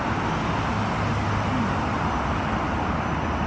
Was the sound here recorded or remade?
recorded